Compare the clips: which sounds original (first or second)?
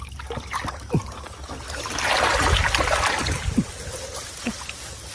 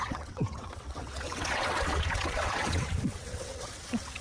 first